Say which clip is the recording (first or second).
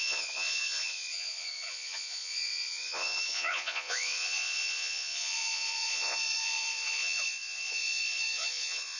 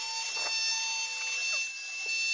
second